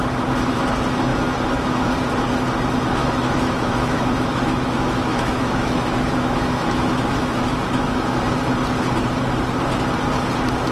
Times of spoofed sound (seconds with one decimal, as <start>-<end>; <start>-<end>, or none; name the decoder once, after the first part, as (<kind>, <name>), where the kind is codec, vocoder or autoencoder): 3.0-8.2 (autoencoder, DAC-VAE)